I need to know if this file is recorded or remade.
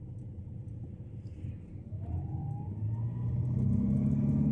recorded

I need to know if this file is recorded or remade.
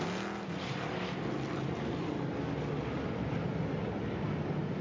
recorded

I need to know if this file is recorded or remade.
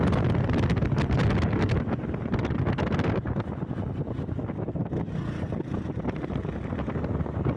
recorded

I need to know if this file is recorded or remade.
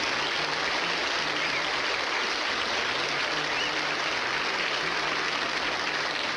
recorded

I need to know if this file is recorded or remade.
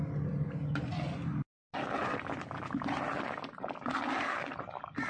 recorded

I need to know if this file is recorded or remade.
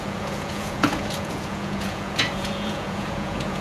remade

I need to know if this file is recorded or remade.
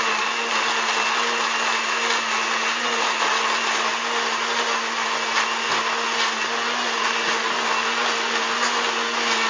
recorded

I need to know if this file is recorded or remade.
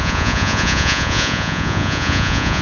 remade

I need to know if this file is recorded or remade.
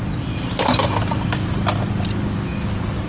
recorded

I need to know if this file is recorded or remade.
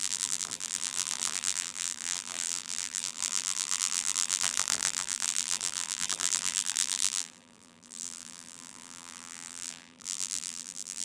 remade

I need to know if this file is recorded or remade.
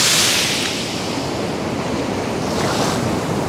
recorded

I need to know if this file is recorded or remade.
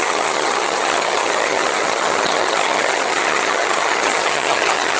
remade